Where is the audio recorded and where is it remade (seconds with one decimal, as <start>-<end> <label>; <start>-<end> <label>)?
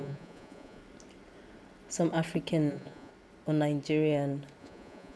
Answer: 0.0-0.8 remade; 0.8-2.7 recorded; 2.7-3.1 remade; 3.1-4.6 recorded; 4.6-5.2 remade